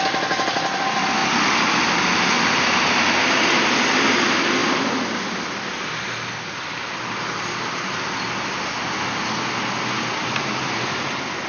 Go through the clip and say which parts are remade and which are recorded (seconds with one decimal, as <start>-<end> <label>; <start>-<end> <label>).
0.0-11.5 recorded